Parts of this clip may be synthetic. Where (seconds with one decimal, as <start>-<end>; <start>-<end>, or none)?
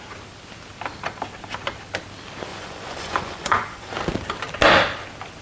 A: 2.5-3.9